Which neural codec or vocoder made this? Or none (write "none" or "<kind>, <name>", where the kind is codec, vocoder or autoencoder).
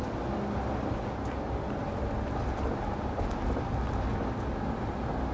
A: none